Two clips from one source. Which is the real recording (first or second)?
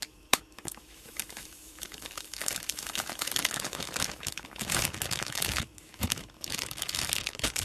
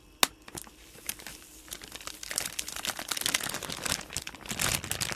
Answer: second